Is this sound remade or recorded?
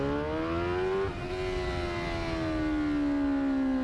recorded